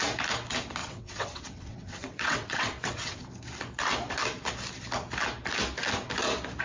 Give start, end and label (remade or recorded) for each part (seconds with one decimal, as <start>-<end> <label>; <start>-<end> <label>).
0.0-0.8 recorded; 0.8-3.2 remade; 3.2-6.6 recorded